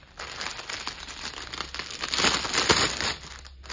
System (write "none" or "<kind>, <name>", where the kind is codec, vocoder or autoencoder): none